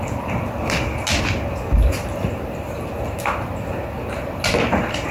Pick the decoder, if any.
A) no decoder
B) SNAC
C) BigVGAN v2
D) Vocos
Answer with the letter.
A